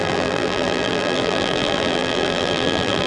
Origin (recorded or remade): remade